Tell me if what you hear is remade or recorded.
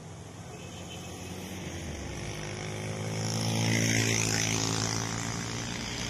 recorded